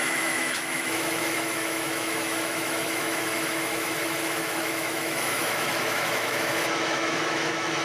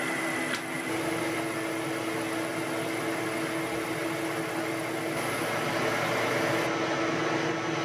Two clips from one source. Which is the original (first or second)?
second